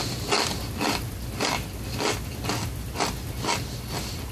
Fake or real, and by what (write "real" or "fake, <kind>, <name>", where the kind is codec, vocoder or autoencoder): real